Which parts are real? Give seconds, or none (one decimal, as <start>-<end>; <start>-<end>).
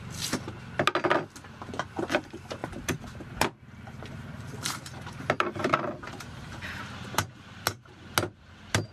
0.0-2.6; 6.8-8.9